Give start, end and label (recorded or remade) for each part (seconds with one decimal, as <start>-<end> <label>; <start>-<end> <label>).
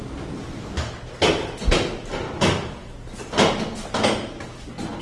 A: 0.0-5.0 recorded